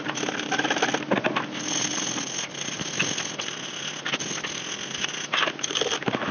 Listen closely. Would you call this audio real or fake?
real